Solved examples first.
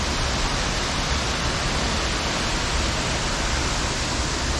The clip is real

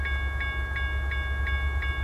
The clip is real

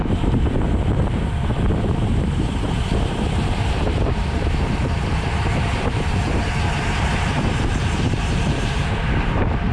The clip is fake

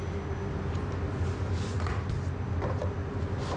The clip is real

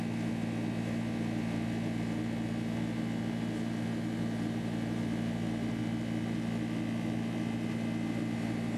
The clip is real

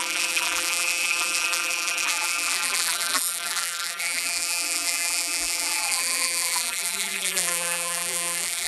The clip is fake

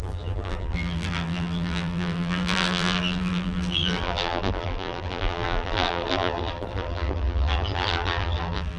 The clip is fake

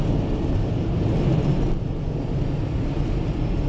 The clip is real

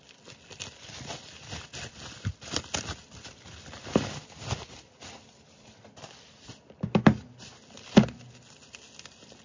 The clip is real